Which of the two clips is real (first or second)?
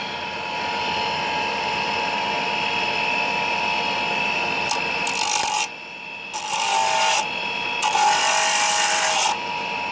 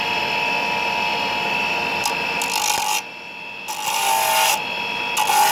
second